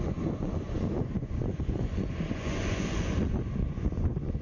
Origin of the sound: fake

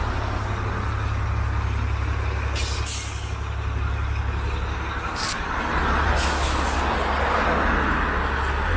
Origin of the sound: real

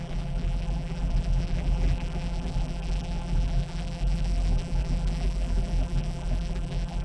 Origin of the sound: fake